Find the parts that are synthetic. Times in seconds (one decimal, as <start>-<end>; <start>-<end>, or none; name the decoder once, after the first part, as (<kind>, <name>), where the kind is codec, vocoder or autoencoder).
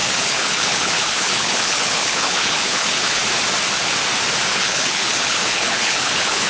0.0-3.2 (codec, HILCodec); 4.5-6.5